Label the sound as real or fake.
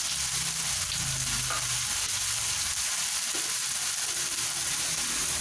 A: real